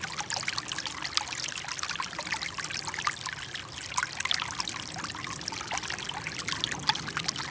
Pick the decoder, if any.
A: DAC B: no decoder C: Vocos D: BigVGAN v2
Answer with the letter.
B